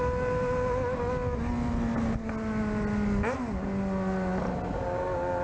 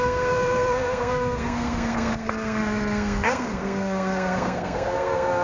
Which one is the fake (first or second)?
second